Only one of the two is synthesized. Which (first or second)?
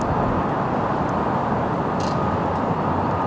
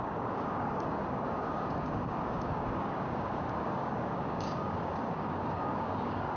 second